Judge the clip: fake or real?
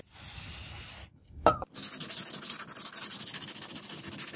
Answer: real